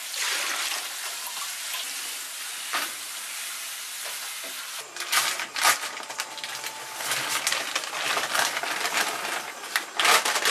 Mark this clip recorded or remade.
recorded